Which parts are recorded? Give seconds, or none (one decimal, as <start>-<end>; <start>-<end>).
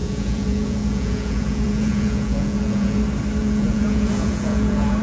3.0-3.4